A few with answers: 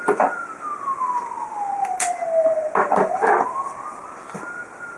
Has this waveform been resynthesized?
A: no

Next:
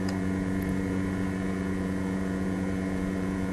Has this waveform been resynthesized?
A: yes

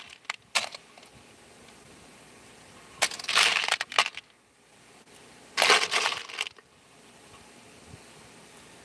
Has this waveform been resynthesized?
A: no